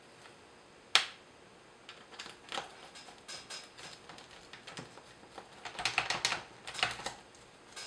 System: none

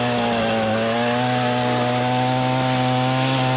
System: none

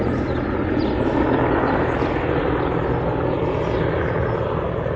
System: none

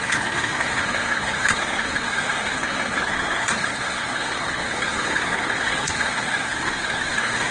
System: codec, SNAC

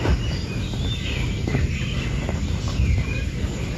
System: none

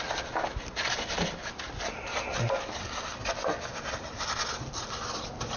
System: none